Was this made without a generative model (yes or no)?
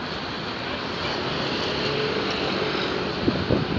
yes